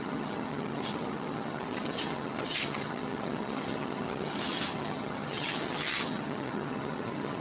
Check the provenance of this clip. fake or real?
fake